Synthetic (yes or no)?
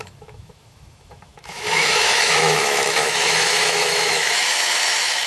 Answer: yes